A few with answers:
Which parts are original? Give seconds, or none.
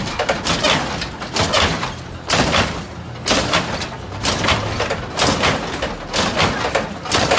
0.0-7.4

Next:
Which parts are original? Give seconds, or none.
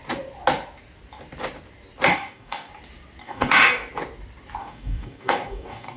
0.0-2.1; 2.7-3.2; 3.9-4.6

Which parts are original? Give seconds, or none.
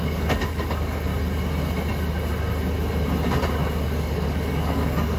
1.1-3.8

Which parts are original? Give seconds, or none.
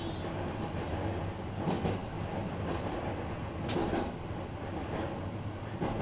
0.0-6.0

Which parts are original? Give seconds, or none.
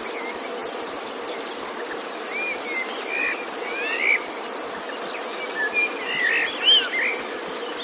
0.0-7.8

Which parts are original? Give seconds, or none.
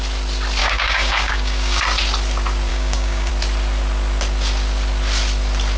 0.0-0.6; 1.8-2.7; 3.3-5.8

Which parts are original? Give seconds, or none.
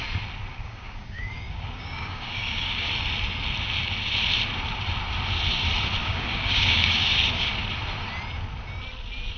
0.0-0.5; 2.9-6.0; 7.5-9.4